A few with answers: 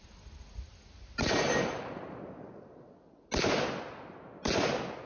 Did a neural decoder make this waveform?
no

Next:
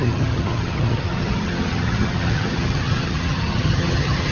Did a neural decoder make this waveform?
yes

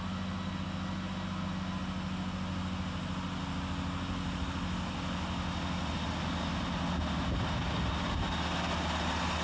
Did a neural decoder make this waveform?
no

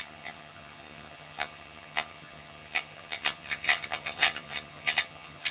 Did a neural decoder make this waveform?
yes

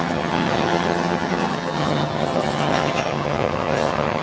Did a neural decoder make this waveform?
yes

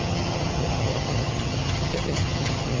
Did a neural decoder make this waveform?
yes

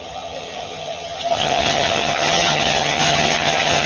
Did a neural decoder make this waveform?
yes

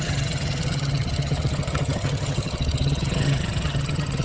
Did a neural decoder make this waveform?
yes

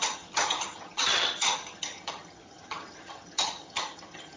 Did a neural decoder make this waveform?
yes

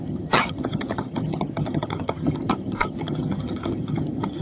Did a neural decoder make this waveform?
yes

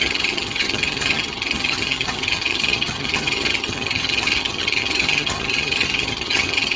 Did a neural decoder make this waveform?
yes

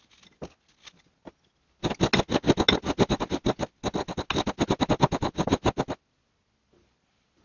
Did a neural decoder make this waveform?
no